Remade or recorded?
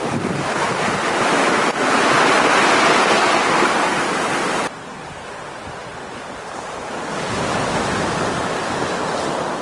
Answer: recorded